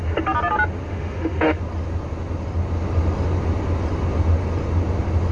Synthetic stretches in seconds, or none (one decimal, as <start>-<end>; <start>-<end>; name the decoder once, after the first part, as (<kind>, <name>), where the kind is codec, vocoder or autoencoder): 0.9-1.6 (autoencoder, DAC-VAE)